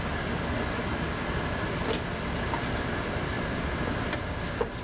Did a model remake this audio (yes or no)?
no